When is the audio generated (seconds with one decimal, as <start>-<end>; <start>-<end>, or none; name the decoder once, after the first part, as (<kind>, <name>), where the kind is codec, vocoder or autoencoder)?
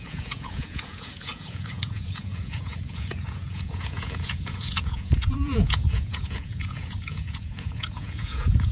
0.0-8.7 (vocoder, Vocos)